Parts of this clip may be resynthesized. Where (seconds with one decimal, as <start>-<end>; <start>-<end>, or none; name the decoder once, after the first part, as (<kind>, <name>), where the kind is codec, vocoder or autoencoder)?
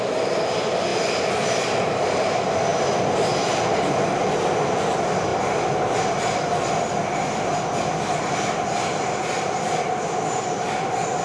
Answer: none